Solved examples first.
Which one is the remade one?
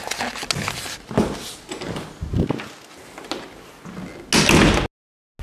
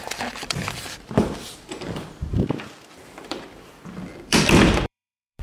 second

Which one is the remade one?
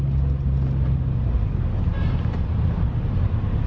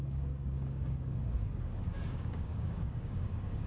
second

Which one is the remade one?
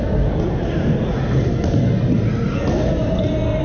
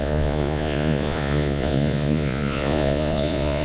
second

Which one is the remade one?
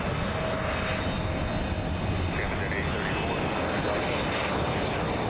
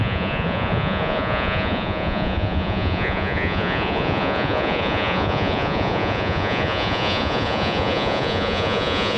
second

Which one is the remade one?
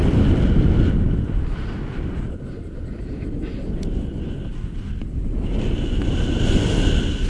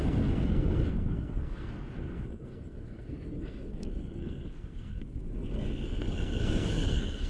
second